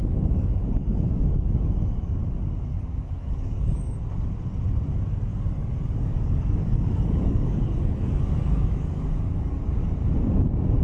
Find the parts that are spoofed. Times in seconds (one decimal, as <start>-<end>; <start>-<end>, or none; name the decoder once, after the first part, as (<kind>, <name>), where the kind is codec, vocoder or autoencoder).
0.0-2.2 (codec, DAC); 2.7-4.0; 5.3-9.6